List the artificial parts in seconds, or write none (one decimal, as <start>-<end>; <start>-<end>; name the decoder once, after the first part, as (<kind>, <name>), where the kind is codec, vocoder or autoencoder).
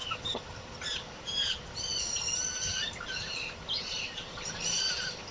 none